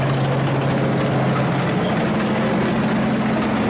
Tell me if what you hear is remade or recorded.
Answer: recorded